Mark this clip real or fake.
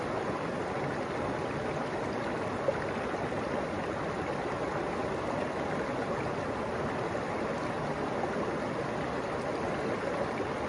real